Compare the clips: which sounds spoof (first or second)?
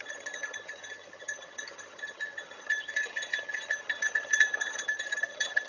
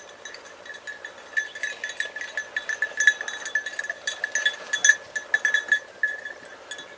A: first